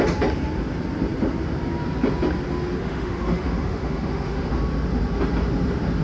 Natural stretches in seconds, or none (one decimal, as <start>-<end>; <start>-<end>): 0.0-2.8; 4.5-6.0